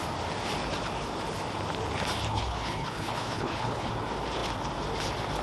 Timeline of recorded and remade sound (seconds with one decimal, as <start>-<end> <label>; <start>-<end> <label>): 0.0-2.3 recorded; 2.3-3.9 remade; 3.9-5.4 recorded